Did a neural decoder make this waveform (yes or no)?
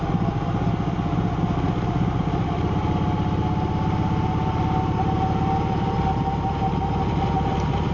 no